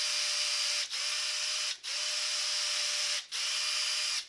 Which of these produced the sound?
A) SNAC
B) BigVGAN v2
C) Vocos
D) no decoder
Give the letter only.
D